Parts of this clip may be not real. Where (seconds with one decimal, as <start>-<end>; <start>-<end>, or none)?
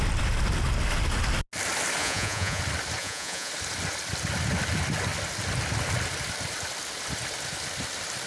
2.0-2.6; 3.0-3.5